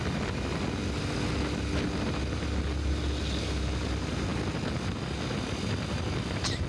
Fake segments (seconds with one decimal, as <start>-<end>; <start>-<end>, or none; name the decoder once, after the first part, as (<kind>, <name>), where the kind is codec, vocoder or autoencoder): none